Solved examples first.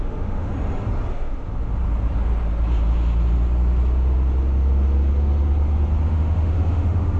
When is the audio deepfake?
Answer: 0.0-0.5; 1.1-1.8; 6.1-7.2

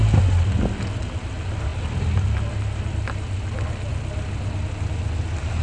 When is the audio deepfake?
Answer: none

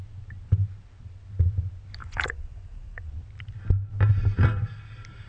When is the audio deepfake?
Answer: 2.0-3.1

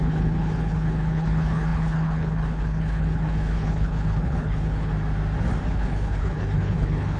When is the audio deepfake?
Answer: 0.0-4.9; 5.7-7.2

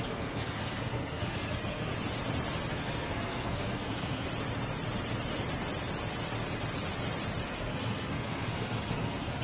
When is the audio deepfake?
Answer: 0.0-1.9; 2.7-4.3; 7.6-9.4

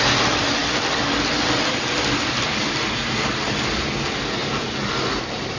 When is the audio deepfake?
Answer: none

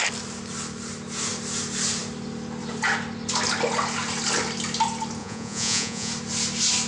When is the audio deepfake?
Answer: 5.2-6.1

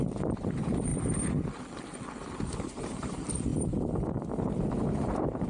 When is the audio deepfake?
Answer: 0.0-0.9; 2.8-3.5; 4.7-5.5